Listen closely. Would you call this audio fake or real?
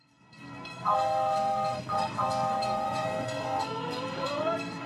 fake